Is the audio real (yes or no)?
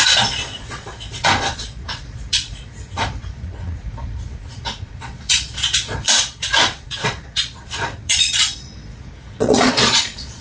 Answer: no